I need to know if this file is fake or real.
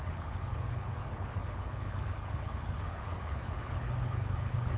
fake